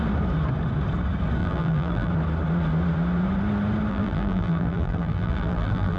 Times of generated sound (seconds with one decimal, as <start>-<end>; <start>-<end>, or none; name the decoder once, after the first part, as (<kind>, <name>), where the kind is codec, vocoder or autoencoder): 1.4-2.1 (vocoder, BigVGAN v2); 3.9-6.0